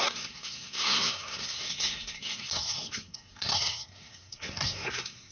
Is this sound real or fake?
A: fake